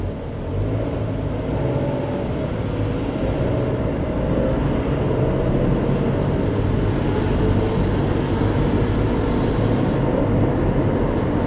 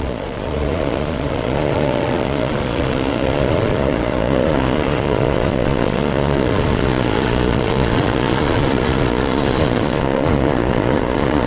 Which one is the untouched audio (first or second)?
first